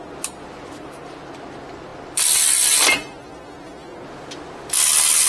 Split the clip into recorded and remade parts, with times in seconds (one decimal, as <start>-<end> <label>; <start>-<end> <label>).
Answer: 0.0-5.3 recorded